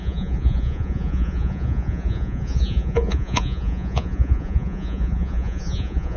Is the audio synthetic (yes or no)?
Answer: yes